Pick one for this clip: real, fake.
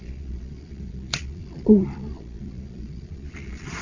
fake